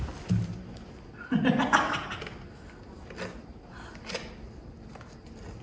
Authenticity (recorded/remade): recorded